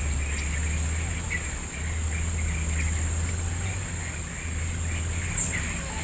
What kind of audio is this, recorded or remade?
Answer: recorded